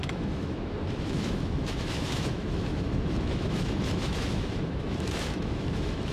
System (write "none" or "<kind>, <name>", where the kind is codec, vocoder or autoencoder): autoencoder, DAC-VAE